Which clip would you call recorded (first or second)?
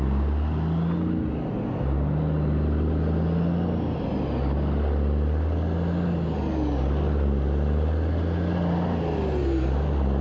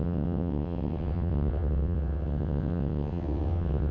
first